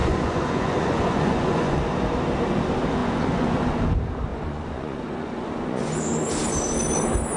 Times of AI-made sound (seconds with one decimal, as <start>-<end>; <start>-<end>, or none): 0.0-1.8; 3.0-3.8; 4.3-5.9